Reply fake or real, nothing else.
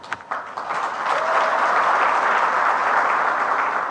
real